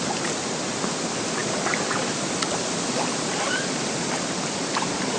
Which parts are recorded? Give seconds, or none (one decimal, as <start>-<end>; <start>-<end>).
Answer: 0.0-5.2